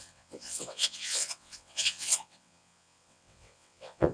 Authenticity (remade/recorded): remade